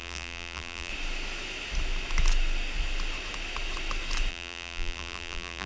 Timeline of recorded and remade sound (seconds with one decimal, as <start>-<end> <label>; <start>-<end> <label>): 0.0-0.9 remade; 0.9-4.3 recorded; 4.3-5.7 remade